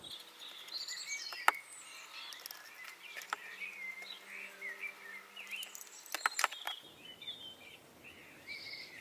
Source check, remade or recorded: recorded